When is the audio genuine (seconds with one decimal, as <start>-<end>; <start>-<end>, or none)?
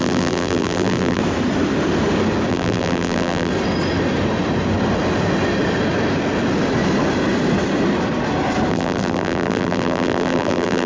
1.2-2.5; 3.5-8.7